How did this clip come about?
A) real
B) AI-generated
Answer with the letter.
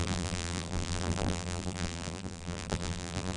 B